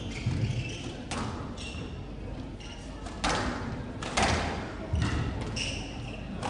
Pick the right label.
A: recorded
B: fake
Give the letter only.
A